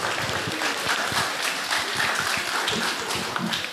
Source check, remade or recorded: recorded